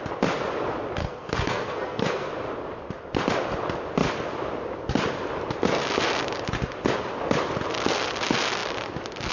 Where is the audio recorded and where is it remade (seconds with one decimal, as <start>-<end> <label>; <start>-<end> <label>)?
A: 0.0-1.0 recorded; 1.0-2.3 remade; 2.3-9.3 recorded